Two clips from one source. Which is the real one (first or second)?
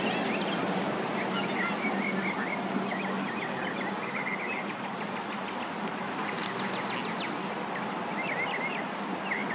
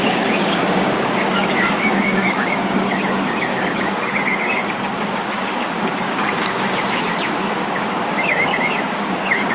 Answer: first